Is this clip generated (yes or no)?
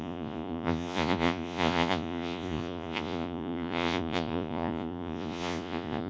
yes